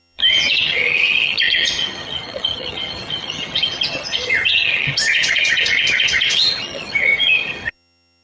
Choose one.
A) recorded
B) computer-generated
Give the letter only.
B